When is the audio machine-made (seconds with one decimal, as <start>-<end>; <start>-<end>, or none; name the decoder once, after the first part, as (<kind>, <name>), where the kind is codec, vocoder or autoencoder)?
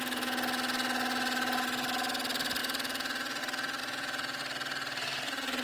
2.6-3.4 (vocoder, Vocos); 3.8-4.4